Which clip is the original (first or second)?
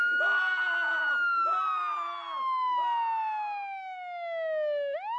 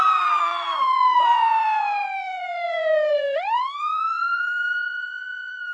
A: first